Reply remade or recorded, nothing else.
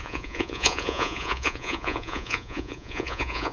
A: remade